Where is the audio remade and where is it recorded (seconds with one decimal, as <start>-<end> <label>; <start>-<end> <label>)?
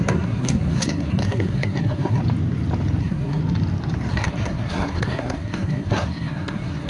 0.0-2.2 remade; 2.2-3.0 recorded; 3.0-3.4 remade; 3.4-4.1 recorded; 4.1-6.9 remade